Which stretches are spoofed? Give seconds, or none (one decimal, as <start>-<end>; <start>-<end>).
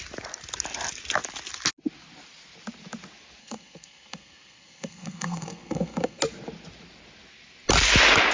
3.4-6.2